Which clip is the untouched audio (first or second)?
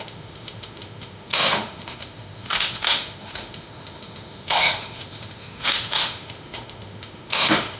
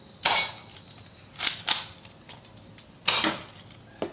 second